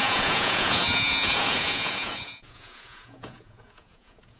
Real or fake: fake